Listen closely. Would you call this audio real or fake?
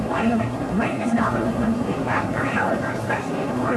fake